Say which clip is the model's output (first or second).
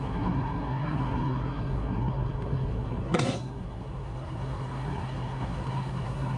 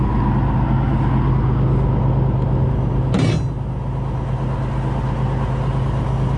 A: first